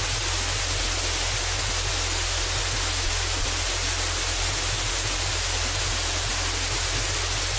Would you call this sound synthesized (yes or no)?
no